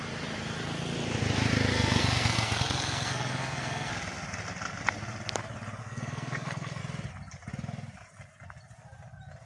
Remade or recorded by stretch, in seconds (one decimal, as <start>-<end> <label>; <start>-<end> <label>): 0.0-1.7 recorded; 1.7-3.9 remade; 3.9-5.8 recorded; 5.8-6.8 remade; 6.8-9.5 recorded